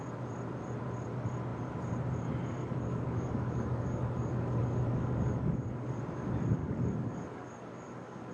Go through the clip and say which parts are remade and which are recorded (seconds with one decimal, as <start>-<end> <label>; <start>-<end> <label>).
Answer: 0.0-2.6 recorded; 2.6-6.0 remade; 6.0-6.6 recorded; 6.6-8.3 remade